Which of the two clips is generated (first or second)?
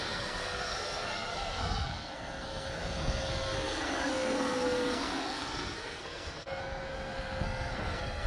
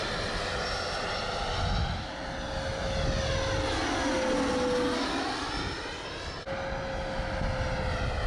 first